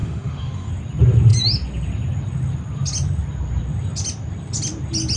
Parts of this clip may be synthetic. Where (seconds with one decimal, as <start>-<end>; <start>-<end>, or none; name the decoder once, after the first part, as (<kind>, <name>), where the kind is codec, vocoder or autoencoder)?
0.0-0.7 (autoencoder, DAC-VAE)